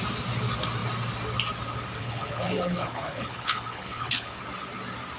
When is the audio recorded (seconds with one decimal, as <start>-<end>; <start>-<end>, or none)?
0.0-2.0; 4.4-5.2